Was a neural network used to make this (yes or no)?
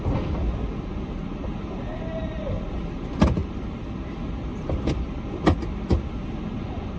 no